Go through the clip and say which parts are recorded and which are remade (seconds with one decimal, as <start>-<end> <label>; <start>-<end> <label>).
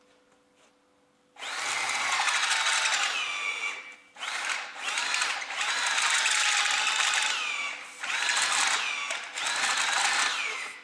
0.0-5.0 recorded; 5.0-8.4 remade; 8.4-10.8 recorded